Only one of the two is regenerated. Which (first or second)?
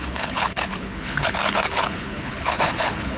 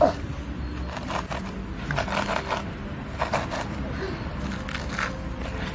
first